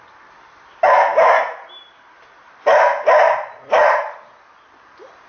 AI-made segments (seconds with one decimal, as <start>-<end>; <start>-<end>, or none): none